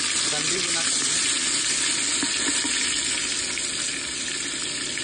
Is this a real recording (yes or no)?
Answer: yes